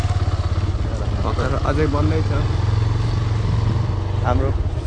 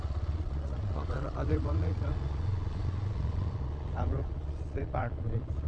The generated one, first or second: second